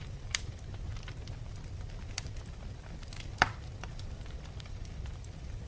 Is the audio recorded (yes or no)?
no